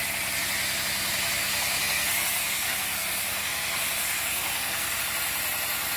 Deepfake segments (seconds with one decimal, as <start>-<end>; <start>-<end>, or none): 1.4-5.0